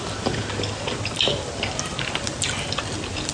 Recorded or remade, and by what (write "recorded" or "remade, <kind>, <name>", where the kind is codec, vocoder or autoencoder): recorded